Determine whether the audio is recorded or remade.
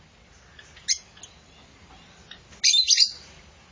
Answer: recorded